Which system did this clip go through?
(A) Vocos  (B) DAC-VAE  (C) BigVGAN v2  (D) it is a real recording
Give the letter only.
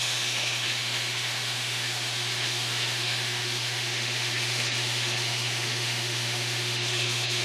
B